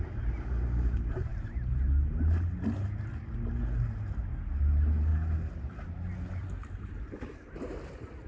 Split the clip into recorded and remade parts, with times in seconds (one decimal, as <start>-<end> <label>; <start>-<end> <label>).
0.0-8.3 recorded